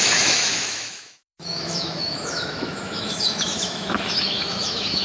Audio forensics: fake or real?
fake